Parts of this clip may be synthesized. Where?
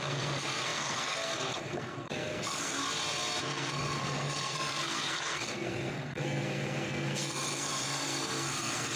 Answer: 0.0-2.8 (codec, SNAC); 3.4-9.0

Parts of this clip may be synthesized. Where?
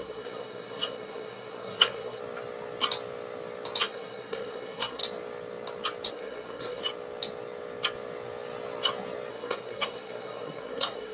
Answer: 0.0-2.2 (codec, SNAC); 3.8-5.0; 6.1-6.8; 9.3-11.1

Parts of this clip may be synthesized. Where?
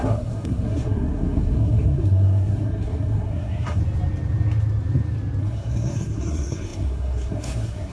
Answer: 0.0-3.8 (codec, SNAC); 5.4-7.9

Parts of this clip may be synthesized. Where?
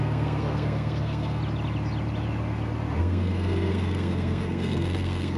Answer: 0.0-1.4 (codec, SNAC); 3.0-5.4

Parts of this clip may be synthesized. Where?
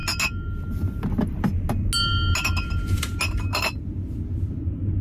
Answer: none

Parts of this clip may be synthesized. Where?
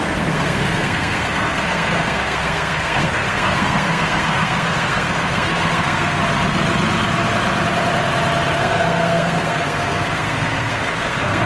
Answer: 0.0-6.2 (codec, SNAC); 8.6-11.5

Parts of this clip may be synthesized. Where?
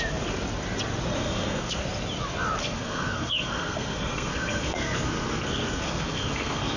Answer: 1.2-1.8 (codec, SNAC); 2.6-6.8